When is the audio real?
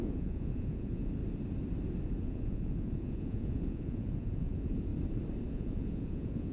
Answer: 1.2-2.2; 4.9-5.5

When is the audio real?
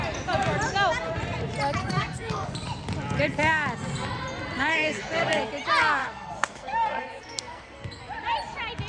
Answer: 0.0-1.8; 2.5-4.7; 5.4-6.0; 8.0-8.9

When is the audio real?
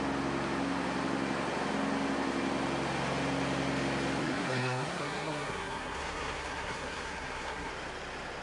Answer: 0.0-4.2; 7.7-8.4